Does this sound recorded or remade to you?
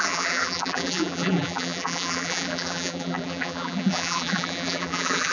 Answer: remade